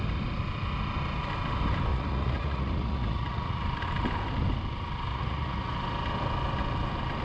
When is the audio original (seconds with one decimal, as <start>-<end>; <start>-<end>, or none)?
0.0-1.9; 3.6-5.1; 5.7-7.2